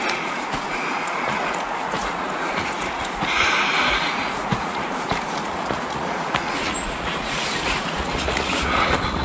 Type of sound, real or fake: fake